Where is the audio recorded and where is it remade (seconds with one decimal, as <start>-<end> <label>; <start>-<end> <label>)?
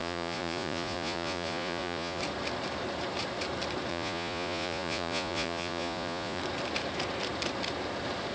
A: 0.0-2.2 remade; 2.2-3.9 recorded; 3.9-6.4 remade; 6.4-8.3 recorded